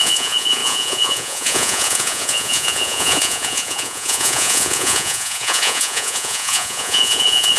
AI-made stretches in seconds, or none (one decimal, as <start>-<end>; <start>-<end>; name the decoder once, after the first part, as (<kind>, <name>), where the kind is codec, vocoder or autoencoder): 0.0-7.6 (vocoder, Vocos)